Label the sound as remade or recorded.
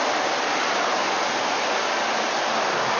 recorded